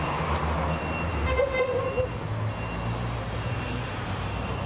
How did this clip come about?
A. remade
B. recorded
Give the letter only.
B